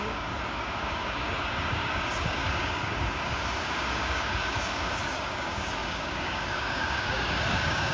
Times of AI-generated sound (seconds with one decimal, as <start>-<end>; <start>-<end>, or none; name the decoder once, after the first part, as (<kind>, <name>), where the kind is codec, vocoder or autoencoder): 0.0-7.9 (codec, DAC)